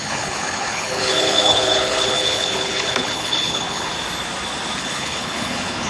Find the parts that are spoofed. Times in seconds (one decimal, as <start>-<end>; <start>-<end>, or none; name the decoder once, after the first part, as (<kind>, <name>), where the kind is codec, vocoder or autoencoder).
0.0-3.9 (codec, HILCodec); 4.8-5.9